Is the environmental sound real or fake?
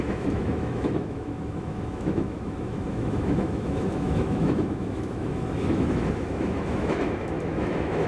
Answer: fake